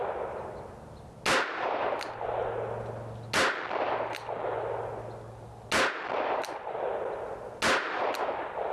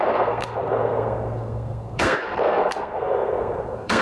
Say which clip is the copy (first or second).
second